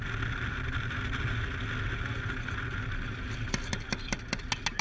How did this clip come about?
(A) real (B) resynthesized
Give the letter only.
A